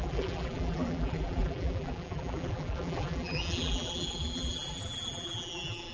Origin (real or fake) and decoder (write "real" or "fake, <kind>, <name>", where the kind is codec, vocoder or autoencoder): fake, vocoder, BigVGAN v2